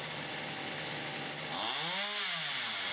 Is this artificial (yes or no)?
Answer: no